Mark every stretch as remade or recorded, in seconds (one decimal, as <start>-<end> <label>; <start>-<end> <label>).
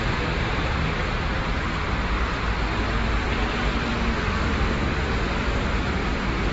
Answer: 0.0-6.5 recorded